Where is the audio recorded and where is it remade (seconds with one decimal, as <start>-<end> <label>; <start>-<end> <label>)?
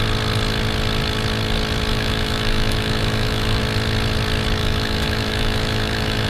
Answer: 0.0-1.9 recorded; 1.9-3.6 remade; 3.6-4.6 recorded; 4.6-6.3 remade